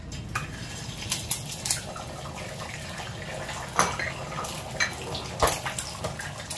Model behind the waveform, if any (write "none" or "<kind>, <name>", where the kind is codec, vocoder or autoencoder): none